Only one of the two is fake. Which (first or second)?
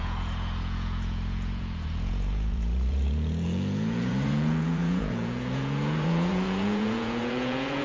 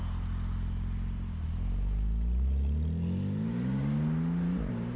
first